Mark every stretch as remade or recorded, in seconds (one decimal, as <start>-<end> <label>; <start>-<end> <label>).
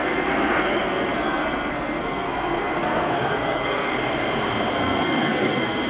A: 0.0-3.9 remade; 3.9-4.7 recorded; 4.7-5.9 remade